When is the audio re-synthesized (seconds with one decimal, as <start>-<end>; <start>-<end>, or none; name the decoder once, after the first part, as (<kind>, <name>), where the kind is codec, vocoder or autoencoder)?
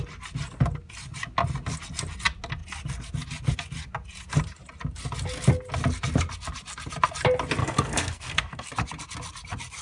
7.6-8.7 (codec, SNAC)